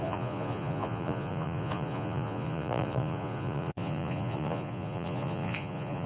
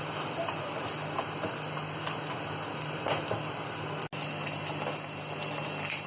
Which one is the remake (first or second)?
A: first